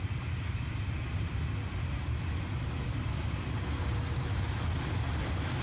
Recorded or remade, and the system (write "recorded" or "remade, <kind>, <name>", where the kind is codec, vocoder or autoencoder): recorded